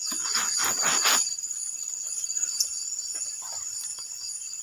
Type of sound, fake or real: real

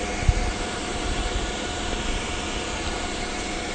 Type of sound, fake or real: real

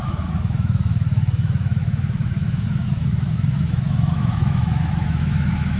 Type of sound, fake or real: fake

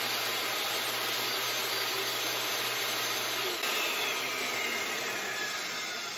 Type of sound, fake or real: real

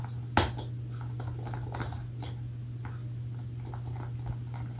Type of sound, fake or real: real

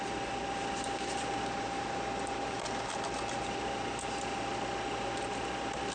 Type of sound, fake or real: real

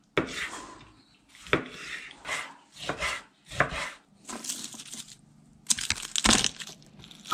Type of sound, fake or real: real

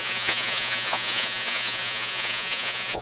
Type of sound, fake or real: fake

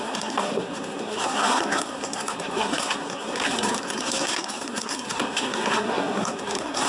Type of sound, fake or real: fake